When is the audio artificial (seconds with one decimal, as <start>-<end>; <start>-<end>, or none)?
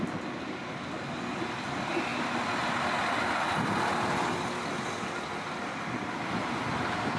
none